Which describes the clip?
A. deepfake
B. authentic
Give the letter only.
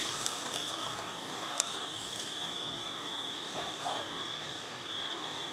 A